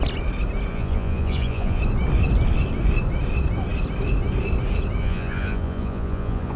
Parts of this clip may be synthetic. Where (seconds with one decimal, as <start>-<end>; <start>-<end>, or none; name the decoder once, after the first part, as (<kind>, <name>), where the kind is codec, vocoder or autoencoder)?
0.7-1.8 (vocoder, Vocos); 5.0-6.6